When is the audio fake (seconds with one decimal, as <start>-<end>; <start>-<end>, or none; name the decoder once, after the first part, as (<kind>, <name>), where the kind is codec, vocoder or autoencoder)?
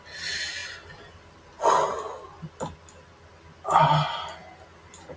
none